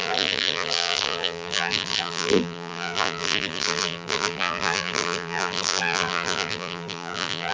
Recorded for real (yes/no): no